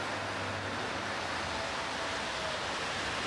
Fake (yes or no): no